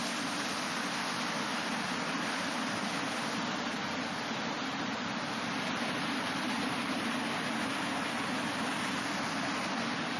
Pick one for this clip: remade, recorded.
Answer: recorded